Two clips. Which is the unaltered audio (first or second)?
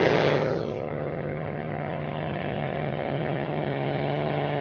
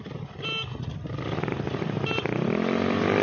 second